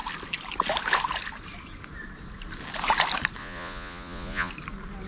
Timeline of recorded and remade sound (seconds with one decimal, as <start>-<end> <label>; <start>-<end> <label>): 0.0-3.4 recorded; 3.4-4.5 remade; 4.5-5.1 recorded